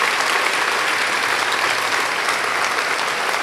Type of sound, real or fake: real